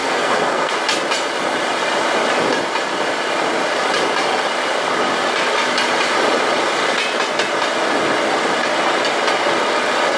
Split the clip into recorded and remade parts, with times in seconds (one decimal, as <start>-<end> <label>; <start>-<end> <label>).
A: 0.0-0.7 remade; 0.7-10.2 recorded